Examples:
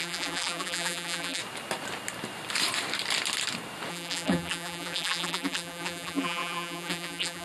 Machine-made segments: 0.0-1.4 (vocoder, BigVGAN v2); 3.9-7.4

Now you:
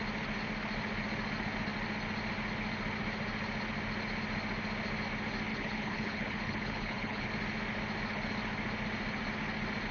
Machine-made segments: 5.5-7.3 (codec, HILCodec)

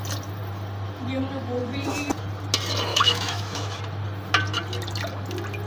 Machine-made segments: 2.9-3.8 (autoencoder, DAC-VAE)

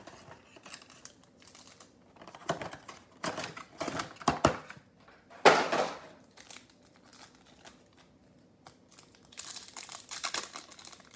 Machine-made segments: none